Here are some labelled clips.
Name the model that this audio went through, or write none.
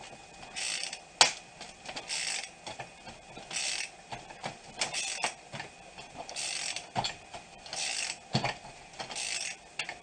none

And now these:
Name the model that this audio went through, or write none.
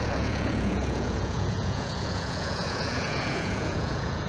vocoder, Vocos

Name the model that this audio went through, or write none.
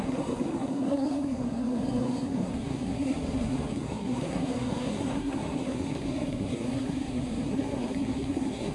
codec, SNAC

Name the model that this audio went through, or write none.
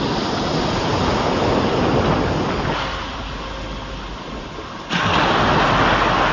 none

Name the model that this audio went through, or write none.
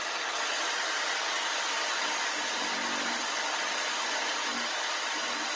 none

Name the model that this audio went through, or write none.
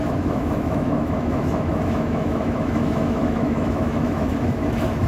autoencoder, DAC-VAE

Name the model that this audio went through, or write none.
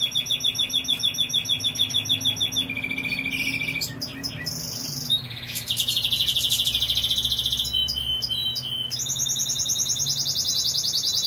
none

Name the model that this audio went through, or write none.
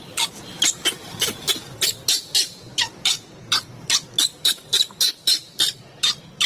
vocoder, BigVGAN v2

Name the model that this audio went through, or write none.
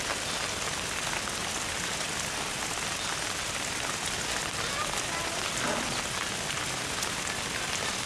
none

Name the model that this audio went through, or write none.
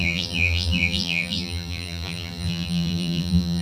vocoder, BigVGAN v2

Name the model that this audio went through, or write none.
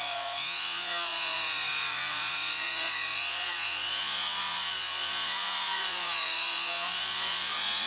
vocoder, Vocos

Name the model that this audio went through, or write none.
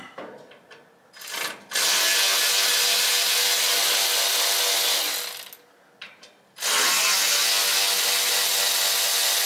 none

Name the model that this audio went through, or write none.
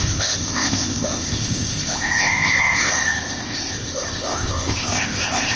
codec, ZipCodec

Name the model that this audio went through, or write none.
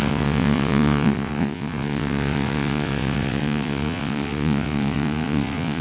vocoder, WaveNeXt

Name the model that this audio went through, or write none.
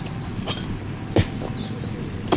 none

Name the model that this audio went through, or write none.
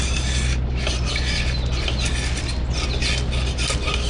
none